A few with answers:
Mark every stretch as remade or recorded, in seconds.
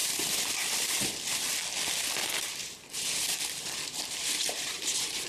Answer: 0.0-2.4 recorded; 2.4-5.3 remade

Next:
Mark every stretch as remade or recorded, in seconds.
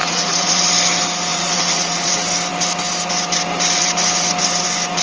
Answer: 0.0-0.6 remade; 0.6-1.3 recorded; 1.3-2.1 remade; 2.1-5.0 recorded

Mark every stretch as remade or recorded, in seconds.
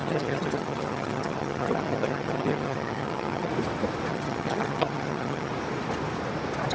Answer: 0.0-3.5 remade; 3.5-4.1 recorded; 4.1-5.5 remade; 5.5-6.7 recorded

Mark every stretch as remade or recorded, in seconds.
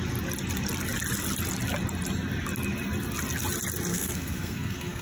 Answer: 0.0-3.9 recorded; 3.9-5.0 remade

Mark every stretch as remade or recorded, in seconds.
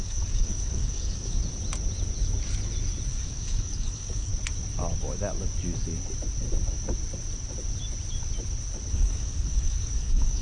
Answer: 0.0-1.4 remade; 1.4-3.1 recorded; 3.1-4.3 remade; 4.3-8.9 recorded; 8.9-10.4 remade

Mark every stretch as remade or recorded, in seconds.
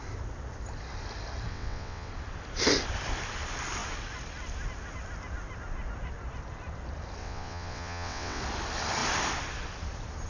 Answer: 0.0-1.5 recorded; 1.5-2.1 remade; 2.1-7.2 recorded; 7.2-8.4 remade; 8.4-10.3 recorded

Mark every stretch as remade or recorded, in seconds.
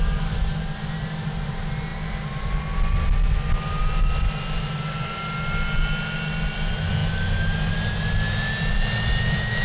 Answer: 0.0-9.6 recorded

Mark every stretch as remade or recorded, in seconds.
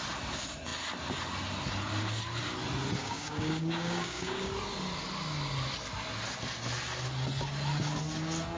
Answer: 0.0-3.0 recorded; 3.0-4.5 remade; 4.5-8.6 recorded